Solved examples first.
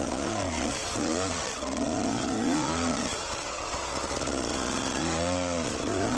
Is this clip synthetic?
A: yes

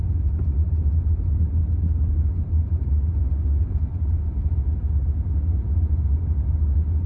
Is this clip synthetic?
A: no